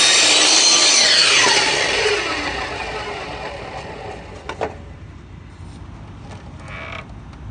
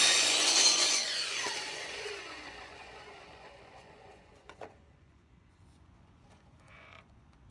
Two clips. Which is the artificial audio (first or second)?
second